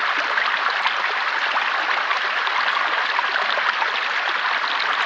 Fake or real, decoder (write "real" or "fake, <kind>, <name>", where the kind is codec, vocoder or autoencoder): real